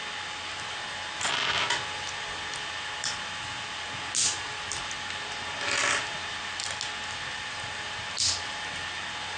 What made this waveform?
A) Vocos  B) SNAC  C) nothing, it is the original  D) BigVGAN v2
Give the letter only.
C